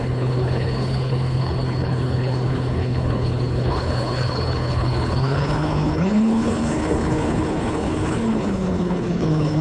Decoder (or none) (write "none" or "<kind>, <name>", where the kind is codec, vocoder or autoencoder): codec, HILCodec